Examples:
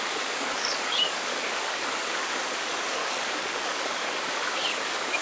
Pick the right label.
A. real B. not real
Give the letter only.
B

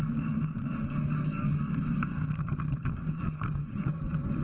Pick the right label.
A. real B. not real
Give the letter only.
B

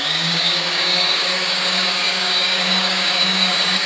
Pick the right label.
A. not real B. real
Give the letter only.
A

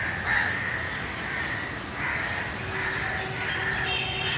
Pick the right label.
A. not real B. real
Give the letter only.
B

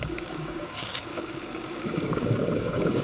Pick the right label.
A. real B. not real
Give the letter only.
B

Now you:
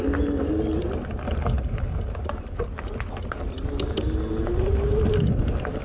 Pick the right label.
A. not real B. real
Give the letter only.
B